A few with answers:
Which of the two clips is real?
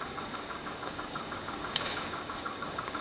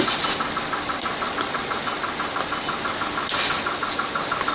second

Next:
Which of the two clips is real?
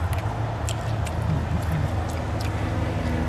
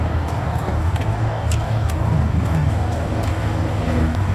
first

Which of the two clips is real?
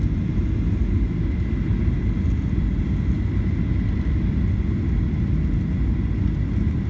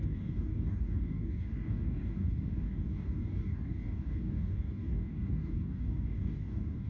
first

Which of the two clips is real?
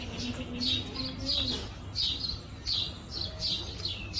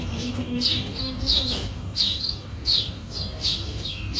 first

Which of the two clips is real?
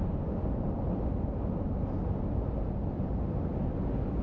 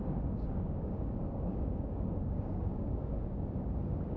first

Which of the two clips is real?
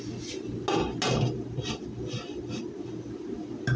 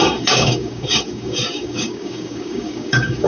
first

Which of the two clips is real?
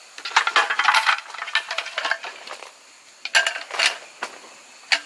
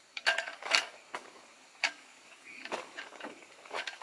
first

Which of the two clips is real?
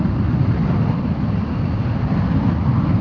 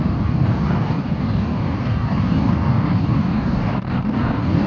first